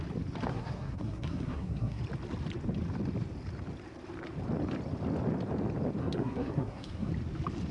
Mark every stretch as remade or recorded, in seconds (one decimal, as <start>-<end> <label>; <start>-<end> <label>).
0.0-0.5 recorded; 0.5-2.0 remade; 2.0-6.0 recorded; 6.0-7.1 remade; 7.1-7.7 recorded